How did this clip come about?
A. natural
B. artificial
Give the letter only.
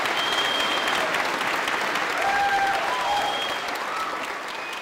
A